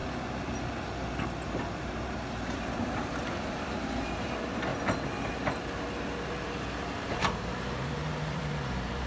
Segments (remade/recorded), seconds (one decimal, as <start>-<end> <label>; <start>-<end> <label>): 0.0-1.5 recorded; 1.5-4.7 remade; 4.7-6.4 recorded; 6.4-9.1 remade